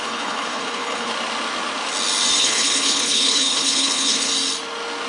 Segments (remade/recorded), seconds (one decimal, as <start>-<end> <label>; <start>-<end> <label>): 0.0-1.1 remade; 1.1-2.4 recorded; 2.4-4.3 remade; 4.3-5.1 recorded